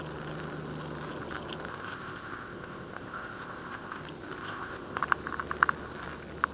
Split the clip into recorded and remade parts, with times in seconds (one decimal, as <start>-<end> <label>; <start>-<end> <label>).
0.0-1.7 recorded; 1.7-4.0 remade; 4.0-4.4 recorded; 4.4-5.0 remade; 5.0-6.5 recorded